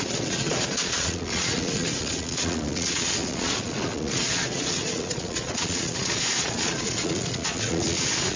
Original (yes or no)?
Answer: no